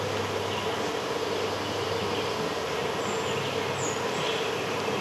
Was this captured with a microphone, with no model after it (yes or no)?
yes